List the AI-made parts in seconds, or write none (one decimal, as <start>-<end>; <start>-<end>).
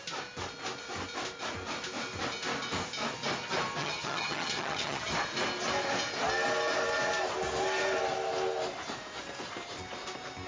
3.8-5.1